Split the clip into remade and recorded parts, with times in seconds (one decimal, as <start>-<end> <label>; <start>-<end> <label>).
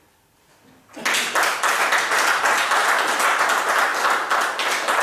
0.0-5.0 recorded